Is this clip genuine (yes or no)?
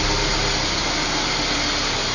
yes